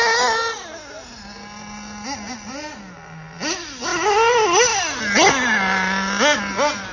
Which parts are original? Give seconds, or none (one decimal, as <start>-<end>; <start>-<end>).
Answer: 0.0-6.9